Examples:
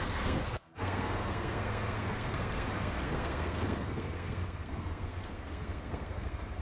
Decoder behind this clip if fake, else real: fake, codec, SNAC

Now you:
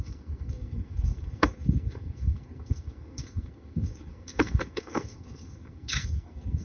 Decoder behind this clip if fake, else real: fake, codec, SNAC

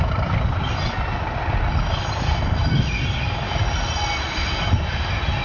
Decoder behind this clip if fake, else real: real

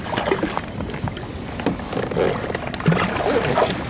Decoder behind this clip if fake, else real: real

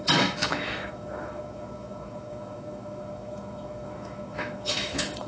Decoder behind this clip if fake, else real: fake, autoencoder, DAC-VAE